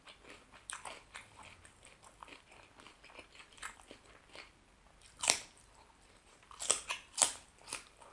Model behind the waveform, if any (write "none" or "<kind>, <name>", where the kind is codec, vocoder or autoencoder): none